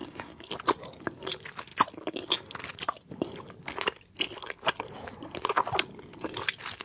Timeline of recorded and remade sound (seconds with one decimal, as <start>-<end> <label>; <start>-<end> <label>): 0.0-0.5 remade; 0.5-6.8 recorded